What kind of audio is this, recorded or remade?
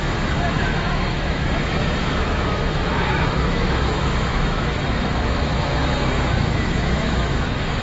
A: remade